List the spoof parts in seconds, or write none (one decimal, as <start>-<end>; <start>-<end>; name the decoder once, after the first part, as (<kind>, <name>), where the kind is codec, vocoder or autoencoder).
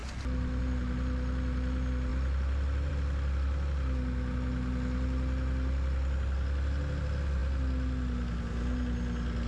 none